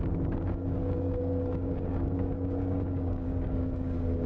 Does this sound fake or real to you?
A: fake